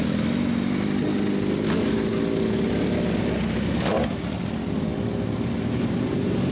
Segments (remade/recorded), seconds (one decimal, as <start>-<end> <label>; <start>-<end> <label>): 0.0-6.5 recorded